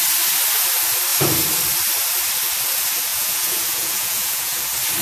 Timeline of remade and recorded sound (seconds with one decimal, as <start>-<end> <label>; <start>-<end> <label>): 0.0-3.1 recorded; 3.1-4.6 remade; 4.6-5.0 recorded